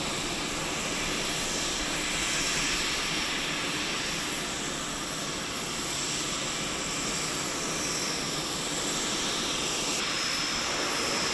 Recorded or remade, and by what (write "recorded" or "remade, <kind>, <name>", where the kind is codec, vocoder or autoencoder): recorded